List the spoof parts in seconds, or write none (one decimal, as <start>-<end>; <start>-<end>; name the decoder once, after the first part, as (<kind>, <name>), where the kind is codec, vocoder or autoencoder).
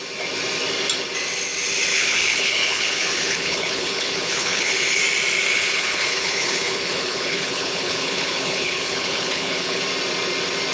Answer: 1.9-5.0 (codec, HILCodec); 5.5-9.8